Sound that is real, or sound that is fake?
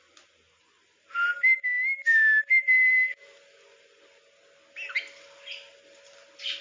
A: real